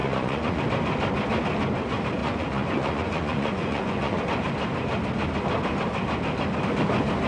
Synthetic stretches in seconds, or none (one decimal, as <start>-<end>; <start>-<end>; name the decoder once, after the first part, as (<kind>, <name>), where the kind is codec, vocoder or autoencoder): 0.0-0.6 (vocoder, Vocos); 2.2-4.2